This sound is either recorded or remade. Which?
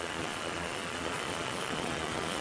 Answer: remade